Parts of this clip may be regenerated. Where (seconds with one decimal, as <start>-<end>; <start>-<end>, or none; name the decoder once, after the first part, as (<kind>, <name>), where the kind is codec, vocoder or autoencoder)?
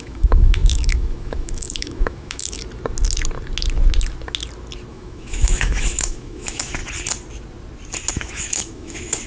0.0-2.6 (autoencoder, DAC-VAE); 4.9-6.8; 8.1-9.3